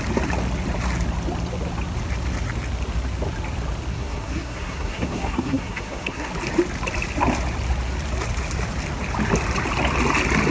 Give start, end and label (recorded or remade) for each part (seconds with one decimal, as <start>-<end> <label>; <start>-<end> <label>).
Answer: 0.0-3.9 recorded; 3.9-6.3 remade; 6.3-10.5 recorded